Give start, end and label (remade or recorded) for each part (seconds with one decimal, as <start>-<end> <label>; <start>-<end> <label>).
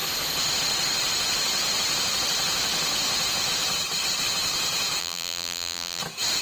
0.0-5.0 recorded; 5.0-6.0 remade; 6.0-6.4 recorded